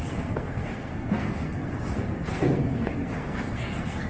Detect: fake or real fake